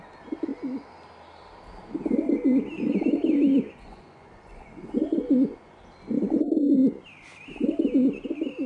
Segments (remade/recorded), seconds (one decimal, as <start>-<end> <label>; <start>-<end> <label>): 0.0-3.5 recorded; 3.5-5.8 remade; 5.8-8.7 recorded